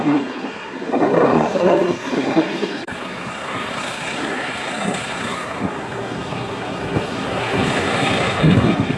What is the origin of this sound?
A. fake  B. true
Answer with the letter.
A